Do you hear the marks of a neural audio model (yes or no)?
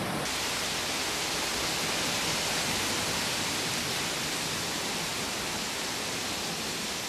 no